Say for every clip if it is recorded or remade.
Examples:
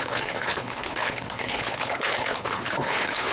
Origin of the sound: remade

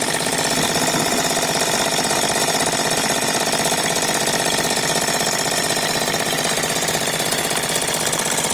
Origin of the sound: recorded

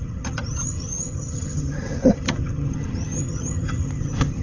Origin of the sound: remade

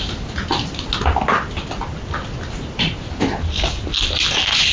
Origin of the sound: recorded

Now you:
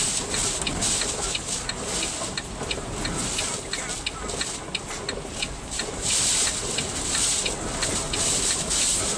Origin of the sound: recorded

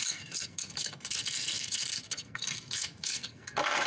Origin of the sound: remade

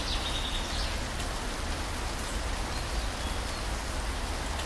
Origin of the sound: recorded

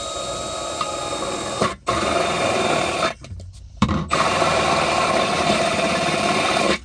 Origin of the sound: remade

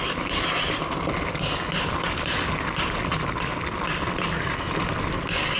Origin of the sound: recorded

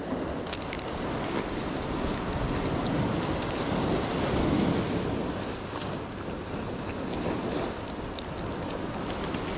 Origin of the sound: recorded